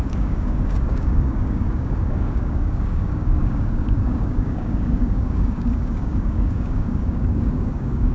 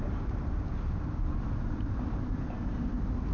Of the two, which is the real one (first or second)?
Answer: second